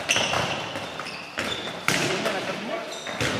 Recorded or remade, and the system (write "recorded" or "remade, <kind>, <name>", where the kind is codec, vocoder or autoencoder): recorded